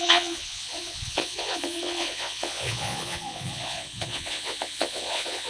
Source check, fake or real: fake